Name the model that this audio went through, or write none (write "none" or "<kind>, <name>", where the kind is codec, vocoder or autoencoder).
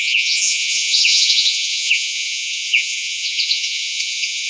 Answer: vocoder, Vocos